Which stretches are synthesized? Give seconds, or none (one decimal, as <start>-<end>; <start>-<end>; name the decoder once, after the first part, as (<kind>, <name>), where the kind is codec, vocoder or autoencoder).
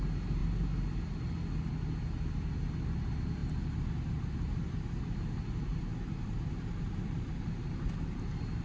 5.9-8.2 (vocoder, BigVGAN v2)